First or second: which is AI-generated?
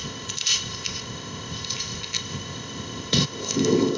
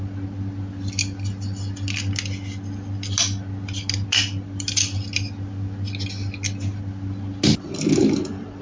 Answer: first